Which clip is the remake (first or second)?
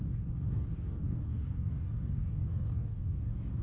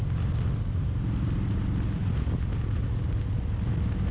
first